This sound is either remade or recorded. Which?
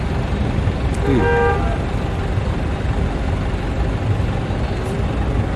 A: recorded